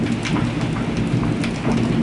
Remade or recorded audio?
recorded